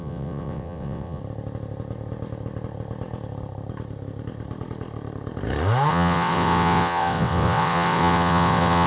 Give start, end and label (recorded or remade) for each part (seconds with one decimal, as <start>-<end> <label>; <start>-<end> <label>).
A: 0.0-1.2 remade; 1.2-5.9 recorded; 5.9-8.9 remade